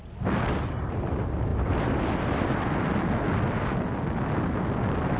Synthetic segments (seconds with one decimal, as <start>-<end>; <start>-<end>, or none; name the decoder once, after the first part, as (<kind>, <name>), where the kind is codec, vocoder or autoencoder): none